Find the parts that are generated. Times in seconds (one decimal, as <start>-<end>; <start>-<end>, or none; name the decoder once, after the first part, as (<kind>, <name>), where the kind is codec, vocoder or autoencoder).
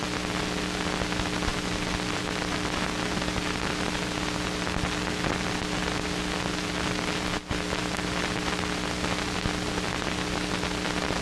none